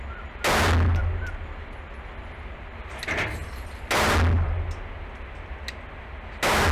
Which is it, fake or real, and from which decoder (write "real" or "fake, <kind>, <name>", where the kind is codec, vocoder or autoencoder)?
real